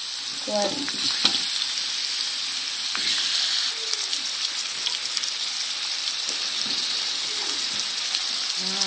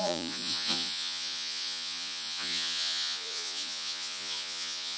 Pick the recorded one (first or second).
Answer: first